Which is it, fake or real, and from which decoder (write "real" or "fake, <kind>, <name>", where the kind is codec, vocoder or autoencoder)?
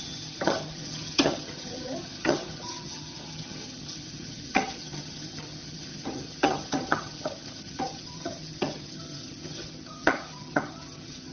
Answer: fake, vocoder, HiFi-GAN